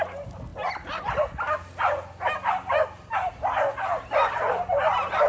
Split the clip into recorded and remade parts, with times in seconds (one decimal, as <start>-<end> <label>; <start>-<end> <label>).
0.0-5.3 recorded